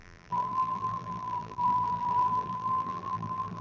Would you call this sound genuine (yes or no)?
no